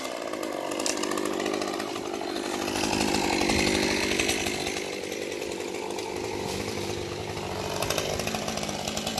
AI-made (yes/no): no